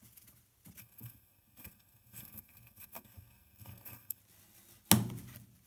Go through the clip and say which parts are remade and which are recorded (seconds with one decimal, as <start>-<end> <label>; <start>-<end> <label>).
0.0-0.8 recorded; 0.8-4.2 remade; 4.2-5.7 recorded